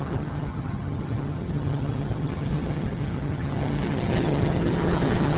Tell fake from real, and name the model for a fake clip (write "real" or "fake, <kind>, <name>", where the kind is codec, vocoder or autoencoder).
fake, vocoder, HiFi-GAN